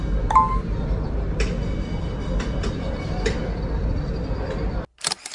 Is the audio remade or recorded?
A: recorded